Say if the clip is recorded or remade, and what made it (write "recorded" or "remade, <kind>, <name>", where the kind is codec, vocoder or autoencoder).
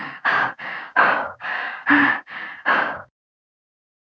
remade, codec, DAC